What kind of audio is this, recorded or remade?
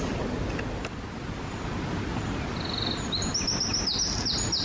recorded